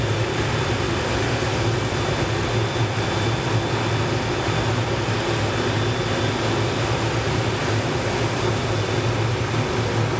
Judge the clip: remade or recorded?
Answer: recorded